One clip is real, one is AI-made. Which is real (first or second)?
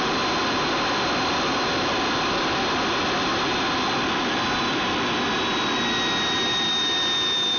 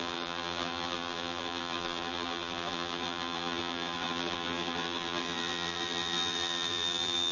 first